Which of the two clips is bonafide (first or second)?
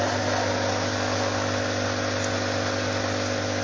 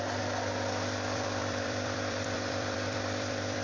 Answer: first